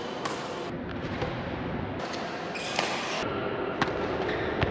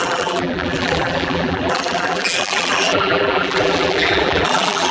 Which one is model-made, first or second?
second